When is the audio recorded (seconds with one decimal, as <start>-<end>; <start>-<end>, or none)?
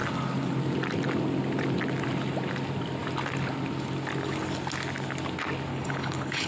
0.0-5.7